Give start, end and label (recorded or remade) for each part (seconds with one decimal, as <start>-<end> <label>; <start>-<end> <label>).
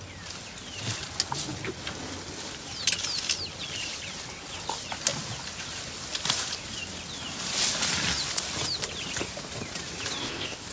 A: 0.0-10.2 recorded; 10.2-10.7 remade